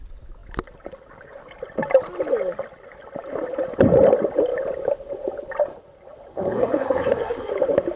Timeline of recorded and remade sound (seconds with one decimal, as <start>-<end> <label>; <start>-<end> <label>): 0.0-6.3 recorded; 6.3-7.5 remade; 7.5-8.0 recorded